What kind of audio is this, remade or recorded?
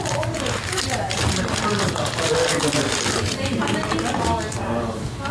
recorded